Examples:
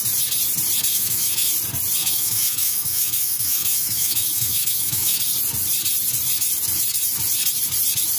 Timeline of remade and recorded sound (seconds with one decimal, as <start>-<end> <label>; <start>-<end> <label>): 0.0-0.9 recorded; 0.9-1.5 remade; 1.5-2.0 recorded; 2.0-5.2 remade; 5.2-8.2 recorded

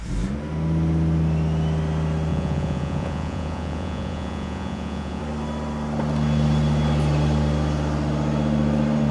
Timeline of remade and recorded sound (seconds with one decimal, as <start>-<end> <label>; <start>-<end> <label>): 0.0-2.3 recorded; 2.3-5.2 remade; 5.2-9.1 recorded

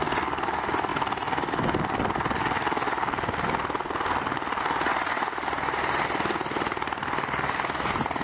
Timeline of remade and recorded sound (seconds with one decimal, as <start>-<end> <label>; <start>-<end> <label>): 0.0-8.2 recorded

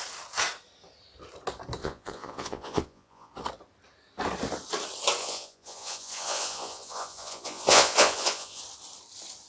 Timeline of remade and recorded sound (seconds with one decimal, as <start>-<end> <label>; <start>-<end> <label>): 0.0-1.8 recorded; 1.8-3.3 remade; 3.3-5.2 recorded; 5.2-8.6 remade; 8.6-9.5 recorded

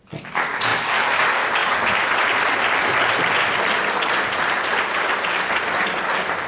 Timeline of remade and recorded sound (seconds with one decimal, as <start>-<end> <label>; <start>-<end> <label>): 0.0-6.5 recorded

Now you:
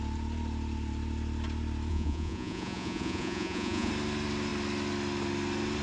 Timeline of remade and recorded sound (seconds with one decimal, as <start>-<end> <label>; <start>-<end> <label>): 0.0-1.9 recorded; 1.9-3.9 remade; 3.9-5.8 recorded